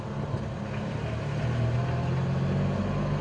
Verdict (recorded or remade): recorded